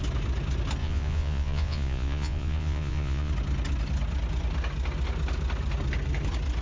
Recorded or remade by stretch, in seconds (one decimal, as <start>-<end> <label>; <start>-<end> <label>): 0.0-0.8 recorded; 0.8-3.3 remade; 3.3-6.6 recorded